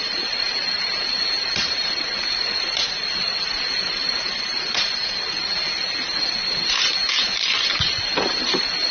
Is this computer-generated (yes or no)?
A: yes